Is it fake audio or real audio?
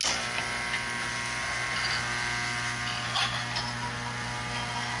real